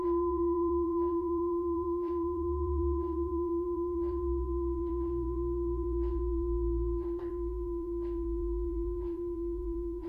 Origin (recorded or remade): remade